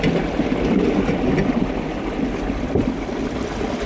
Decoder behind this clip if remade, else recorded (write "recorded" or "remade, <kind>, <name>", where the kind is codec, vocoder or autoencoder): recorded